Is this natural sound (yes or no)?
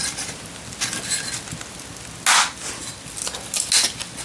yes